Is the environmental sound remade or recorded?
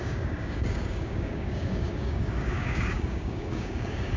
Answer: remade